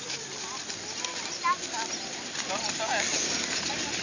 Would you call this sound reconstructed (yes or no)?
no